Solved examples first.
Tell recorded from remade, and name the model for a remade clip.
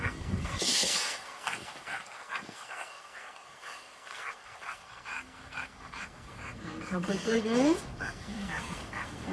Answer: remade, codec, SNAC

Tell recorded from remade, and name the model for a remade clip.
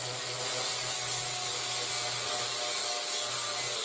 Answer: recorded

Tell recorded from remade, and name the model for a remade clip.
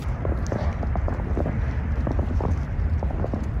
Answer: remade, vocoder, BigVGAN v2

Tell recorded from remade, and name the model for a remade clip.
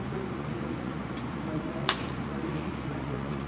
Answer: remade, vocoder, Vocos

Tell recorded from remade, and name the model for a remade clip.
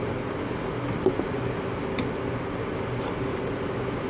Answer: recorded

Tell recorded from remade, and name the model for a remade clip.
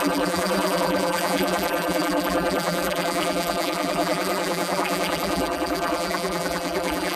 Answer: remade, vocoder, BigVGAN v2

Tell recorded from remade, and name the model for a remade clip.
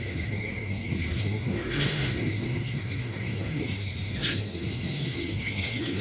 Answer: remade, codec, SNAC